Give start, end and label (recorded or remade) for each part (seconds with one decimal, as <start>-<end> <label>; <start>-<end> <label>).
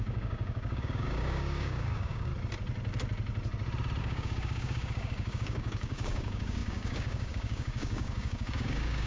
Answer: 0.0-2.3 remade; 2.3-4.0 recorded; 4.0-9.1 remade